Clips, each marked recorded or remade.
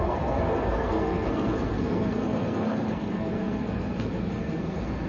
remade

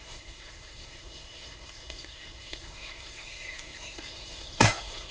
remade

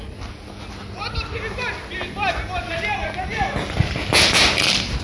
recorded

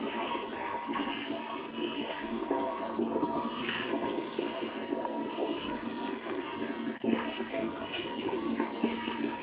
remade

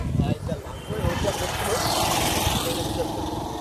recorded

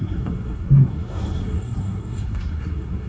remade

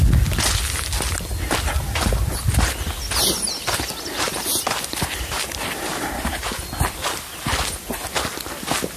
recorded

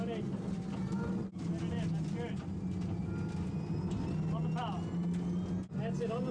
recorded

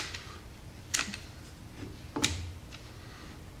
recorded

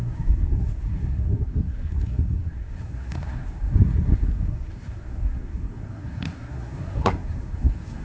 remade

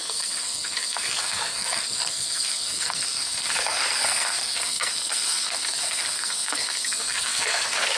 remade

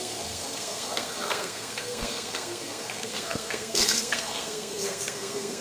remade